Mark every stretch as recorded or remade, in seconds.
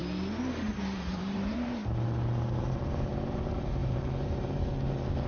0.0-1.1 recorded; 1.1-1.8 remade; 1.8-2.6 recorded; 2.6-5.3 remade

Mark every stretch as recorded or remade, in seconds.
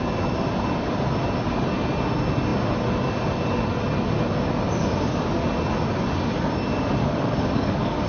0.0-7.0 recorded; 7.0-8.1 remade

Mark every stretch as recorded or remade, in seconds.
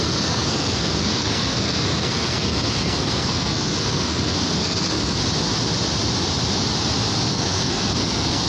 0.0-5.2 remade; 5.2-7.3 recorded; 7.3-8.5 remade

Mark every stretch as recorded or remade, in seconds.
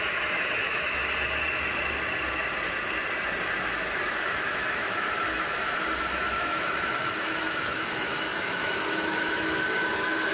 0.0-1.0 remade; 1.0-4.1 recorded; 4.1-10.3 remade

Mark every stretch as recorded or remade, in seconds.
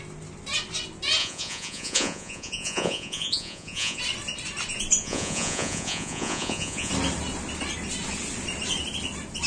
0.0-1.2 recorded; 1.2-4.0 remade; 4.0-5.0 recorded; 5.0-6.9 remade; 6.9-9.5 recorded